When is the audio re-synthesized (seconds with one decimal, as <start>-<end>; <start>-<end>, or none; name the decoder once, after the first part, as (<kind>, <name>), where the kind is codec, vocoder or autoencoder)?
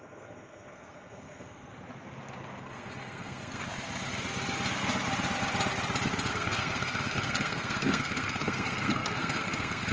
0.0-1.7 (codec, SNAC); 2.6-3.6; 6.3-9.9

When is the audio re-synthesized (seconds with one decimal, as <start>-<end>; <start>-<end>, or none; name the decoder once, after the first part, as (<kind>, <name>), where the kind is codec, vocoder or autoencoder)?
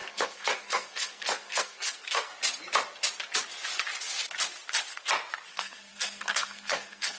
0.0-2.3 (codec, SNAC); 5.5-7.2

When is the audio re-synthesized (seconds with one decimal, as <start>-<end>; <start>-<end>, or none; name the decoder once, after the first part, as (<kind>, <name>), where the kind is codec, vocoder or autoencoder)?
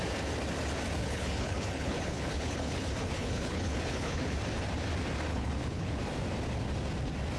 1.0-4.4 (codec, HILCodec); 5.3-6.0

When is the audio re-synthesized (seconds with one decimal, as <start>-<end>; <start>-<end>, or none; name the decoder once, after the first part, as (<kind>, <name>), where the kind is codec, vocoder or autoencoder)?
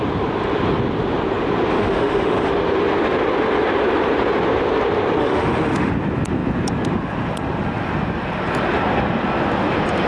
1.7-2.5 (autoencoder, DAC-VAE); 5.2-5.9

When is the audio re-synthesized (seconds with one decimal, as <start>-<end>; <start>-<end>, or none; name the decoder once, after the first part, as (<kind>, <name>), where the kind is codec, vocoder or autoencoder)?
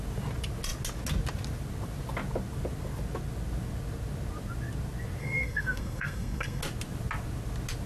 5.2-6.6 (codec, SNAC)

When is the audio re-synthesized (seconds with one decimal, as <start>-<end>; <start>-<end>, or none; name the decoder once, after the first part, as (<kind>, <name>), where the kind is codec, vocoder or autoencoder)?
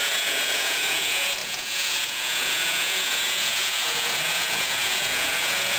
0.0-5.8 (vocoder, Vocos)